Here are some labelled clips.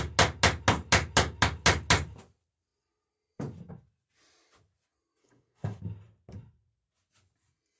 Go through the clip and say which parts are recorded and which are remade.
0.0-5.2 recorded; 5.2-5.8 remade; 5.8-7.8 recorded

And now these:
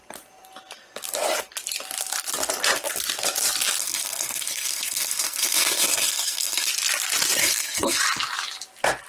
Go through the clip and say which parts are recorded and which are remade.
0.0-3.8 recorded; 3.8-6.7 remade; 6.7-7.4 recorded; 7.4-8.0 remade; 8.0-9.1 recorded